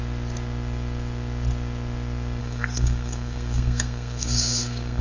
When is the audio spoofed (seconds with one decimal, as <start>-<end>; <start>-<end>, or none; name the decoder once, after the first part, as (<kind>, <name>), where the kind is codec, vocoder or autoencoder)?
2.4-5.0 (codec, SNAC)